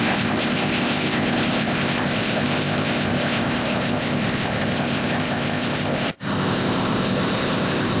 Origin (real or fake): fake